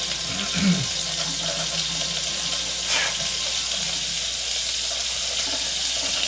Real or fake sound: real